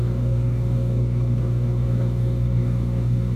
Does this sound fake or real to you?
fake